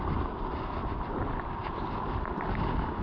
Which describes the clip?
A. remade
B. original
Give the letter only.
B